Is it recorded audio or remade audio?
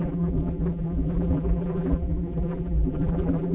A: remade